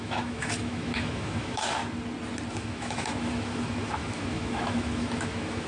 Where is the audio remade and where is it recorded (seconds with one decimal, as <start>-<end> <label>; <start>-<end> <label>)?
0.0-1.8 remade; 1.8-2.5 recorded; 2.5-5.7 remade